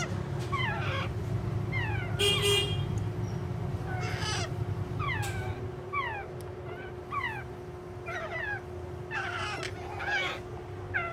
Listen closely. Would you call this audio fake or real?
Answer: real